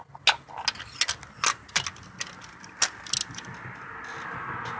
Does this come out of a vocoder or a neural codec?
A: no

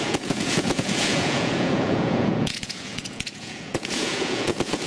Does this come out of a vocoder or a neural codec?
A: yes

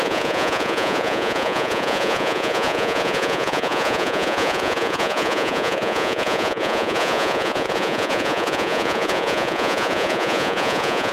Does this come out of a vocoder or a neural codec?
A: yes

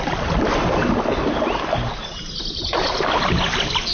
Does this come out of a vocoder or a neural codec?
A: no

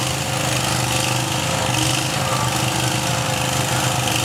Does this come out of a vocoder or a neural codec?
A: no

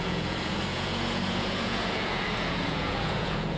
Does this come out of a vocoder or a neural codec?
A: yes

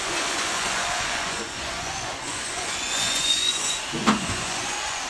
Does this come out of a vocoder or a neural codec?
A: yes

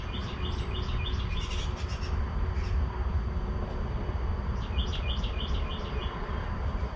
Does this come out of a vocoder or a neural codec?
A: no